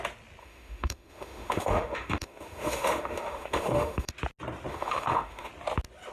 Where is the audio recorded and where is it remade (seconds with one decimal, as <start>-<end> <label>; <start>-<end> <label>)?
0.0-0.4 recorded; 0.4-4.1 remade; 4.1-4.7 recorded; 4.7-5.5 remade; 5.5-6.1 recorded